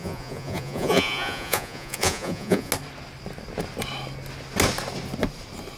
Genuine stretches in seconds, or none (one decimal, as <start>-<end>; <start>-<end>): 2.7-5.8